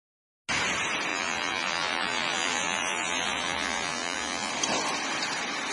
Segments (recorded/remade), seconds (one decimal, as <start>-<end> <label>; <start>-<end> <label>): 0.0-1.1 recorded; 1.1-4.5 remade; 4.5-5.7 recorded

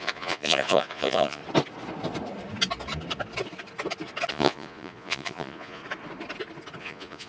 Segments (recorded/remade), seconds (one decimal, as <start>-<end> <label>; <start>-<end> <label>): 0.0-1.4 remade; 1.4-4.3 recorded; 4.3-5.8 remade; 5.8-6.8 recorded; 6.8-7.3 remade

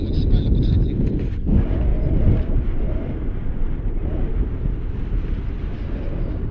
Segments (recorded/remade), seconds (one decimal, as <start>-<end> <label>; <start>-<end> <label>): 0.0-6.5 recorded

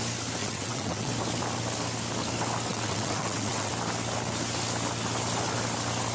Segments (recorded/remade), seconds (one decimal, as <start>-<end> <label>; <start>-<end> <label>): 0.0-0.4 recorded; 0.4-1.1 remade; 1.1-2.7 recorded; 2.7-3.7 remade; 3.7-6.1 recorded

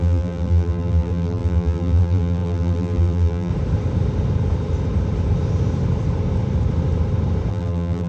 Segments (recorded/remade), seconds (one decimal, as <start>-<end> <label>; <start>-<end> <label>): 0.0-3.5 remade; 3.5-7.5 recorded; 7.5-8.1 remade

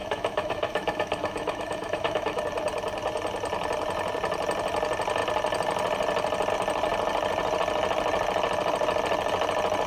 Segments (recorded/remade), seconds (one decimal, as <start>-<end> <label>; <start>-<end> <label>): 0.0-2.4 remade; 2.4-9.9 recorded

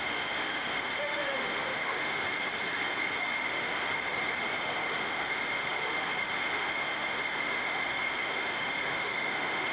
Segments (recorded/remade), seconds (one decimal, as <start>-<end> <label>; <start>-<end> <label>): 0.0-2.2 remade; 2.2-3.2 recorded; 3.2-3.8 remade; 3.8-4.6 recorded; 4.6-9.7 remade